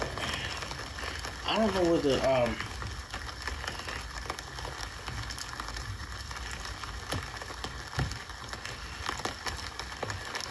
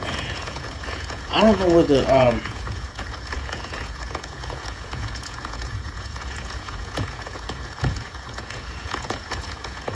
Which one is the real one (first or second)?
first